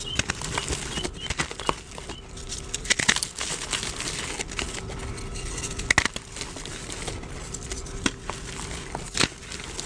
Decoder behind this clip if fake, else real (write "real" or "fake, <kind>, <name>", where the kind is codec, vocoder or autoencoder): real